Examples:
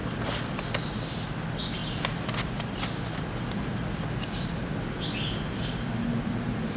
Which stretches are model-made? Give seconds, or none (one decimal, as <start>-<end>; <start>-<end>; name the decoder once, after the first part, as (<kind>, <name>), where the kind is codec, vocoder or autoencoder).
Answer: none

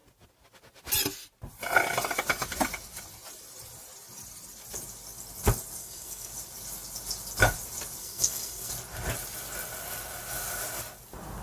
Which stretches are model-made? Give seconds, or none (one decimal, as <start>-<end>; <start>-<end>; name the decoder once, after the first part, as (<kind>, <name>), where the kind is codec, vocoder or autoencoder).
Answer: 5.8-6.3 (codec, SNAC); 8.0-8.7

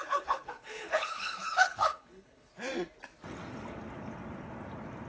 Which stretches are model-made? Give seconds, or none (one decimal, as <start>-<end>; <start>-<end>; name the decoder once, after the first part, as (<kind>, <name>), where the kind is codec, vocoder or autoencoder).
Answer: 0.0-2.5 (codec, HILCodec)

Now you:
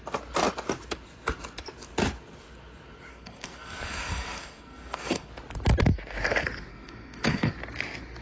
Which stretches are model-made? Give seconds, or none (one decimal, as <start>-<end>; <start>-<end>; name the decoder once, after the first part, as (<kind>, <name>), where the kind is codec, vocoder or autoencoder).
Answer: 3.1-5.3 (codec, SNAC); 6.7-7.5

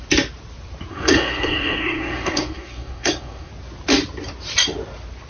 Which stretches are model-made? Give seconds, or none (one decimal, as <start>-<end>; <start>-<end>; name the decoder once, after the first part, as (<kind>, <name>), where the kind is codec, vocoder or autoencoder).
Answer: 0.9-3.5 (codec, SNAC)

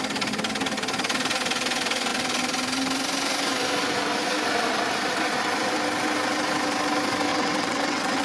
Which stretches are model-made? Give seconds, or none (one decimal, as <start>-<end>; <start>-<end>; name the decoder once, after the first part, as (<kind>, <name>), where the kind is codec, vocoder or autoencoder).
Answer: 7.3-8.2 (vocoder, WaveNeXt)